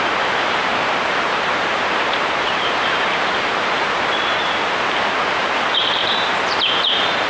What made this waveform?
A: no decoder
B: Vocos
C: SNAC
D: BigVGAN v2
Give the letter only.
D